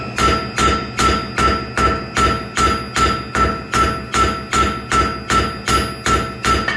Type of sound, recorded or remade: recorded